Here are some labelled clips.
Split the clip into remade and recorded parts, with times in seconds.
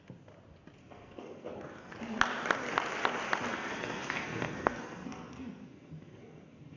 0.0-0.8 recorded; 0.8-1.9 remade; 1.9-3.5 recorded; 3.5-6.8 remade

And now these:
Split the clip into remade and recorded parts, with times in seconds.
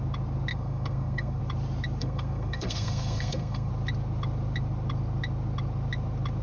0.0-0.5 recorded; 0.5-1.4 remade; 1.4-2.0 recorded; 2.0-3.7 remade; 3.7-6.4 recorded